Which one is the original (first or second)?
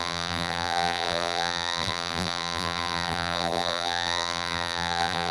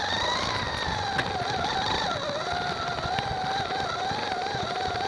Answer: second